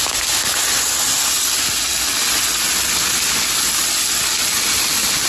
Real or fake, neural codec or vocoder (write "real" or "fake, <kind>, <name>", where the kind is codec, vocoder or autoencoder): real